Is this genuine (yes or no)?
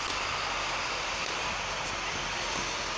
yes